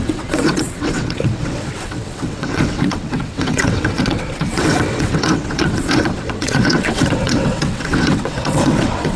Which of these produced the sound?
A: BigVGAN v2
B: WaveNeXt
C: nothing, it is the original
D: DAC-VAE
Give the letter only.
B